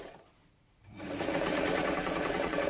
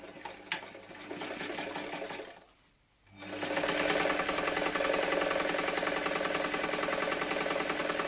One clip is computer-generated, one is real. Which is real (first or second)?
second